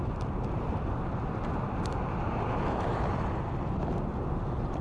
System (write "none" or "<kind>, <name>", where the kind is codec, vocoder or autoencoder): none